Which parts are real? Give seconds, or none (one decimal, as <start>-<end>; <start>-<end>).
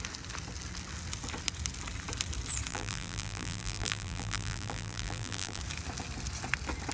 0.0-2.7; 5.6-6.9